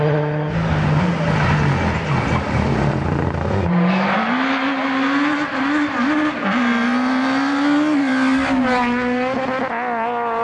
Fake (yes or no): no